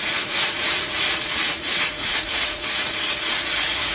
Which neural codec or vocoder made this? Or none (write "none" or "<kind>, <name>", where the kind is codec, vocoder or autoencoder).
vocoder, Vocos